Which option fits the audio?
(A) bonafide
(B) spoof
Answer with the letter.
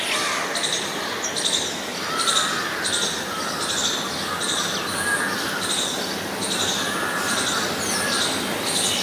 A